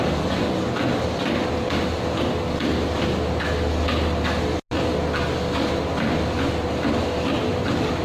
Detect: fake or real real